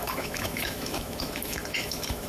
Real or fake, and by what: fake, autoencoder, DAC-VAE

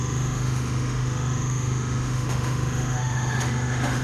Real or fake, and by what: fake, autoencoder, DAC-VAE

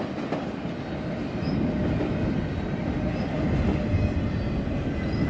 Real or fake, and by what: real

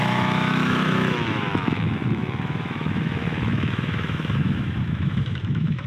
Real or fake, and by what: fake, autoencoder, DAC-VAE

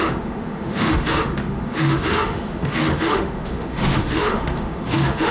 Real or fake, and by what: fake, autoencoder, DAC-VAE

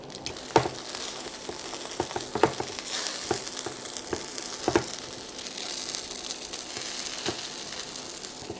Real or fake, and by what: real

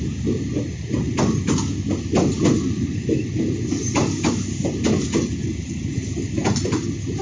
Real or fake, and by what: real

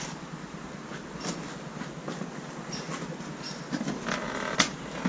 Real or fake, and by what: real